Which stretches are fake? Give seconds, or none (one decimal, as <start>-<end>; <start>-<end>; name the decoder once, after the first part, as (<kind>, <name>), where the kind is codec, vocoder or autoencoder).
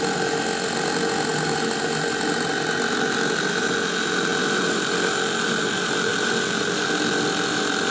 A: 6.1-6.6 (vocoder, BigVGAN v2)